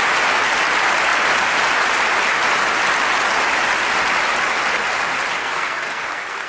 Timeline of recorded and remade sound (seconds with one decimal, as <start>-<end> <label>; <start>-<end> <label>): 0.0-5.4 recorded; 5.4-6.5 remade